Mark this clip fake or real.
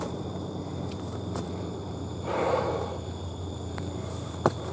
fake